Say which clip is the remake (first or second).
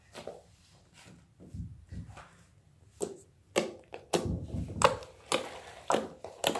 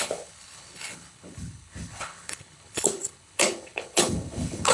second